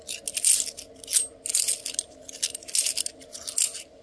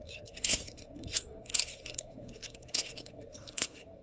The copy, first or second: second